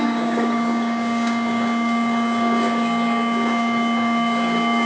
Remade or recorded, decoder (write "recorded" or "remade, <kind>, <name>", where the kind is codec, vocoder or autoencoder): remade, codec, DAC